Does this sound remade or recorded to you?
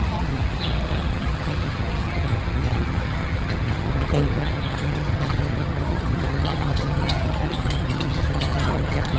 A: remade